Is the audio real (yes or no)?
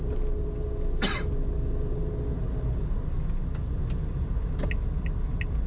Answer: yes